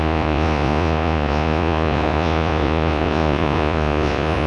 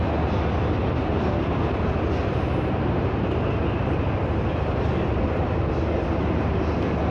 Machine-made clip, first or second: first